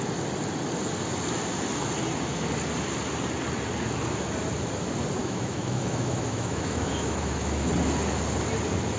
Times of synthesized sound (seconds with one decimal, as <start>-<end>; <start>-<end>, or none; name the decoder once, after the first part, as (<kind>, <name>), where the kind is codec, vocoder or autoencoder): 5.2-7.7 (autoencoder, DAC-VAE)